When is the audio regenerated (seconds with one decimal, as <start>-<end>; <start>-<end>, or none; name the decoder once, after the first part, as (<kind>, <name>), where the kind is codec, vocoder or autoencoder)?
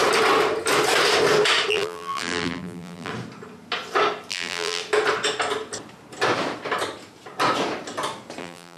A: 1.7-3.1 (vocoder, BigVGAN v2); 4.3-4.8; 8.4-8.8